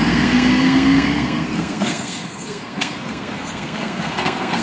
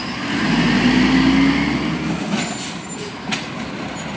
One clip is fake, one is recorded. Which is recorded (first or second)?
second